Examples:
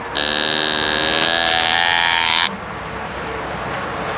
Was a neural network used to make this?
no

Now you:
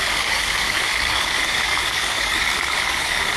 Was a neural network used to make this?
yes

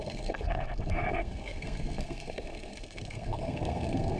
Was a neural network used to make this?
yes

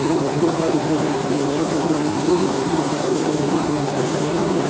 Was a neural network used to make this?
yes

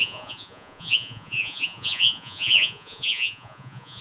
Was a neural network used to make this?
yes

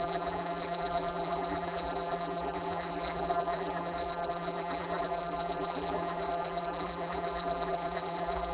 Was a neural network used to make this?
yes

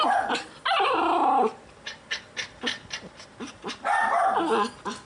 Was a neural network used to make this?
no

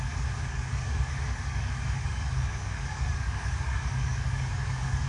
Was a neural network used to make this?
yes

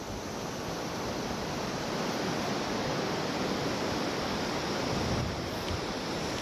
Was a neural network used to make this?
no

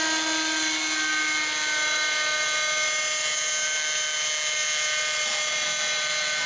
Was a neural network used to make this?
no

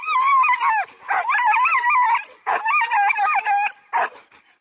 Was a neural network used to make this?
no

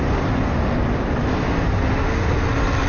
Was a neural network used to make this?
no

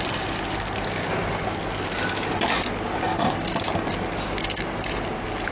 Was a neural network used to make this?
no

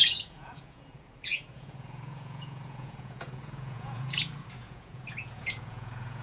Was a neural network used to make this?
yes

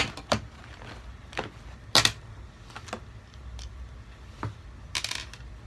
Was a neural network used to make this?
no